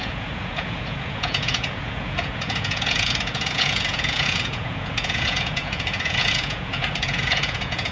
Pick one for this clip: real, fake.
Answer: fake